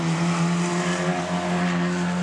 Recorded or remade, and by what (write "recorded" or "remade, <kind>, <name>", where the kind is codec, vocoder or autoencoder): recorded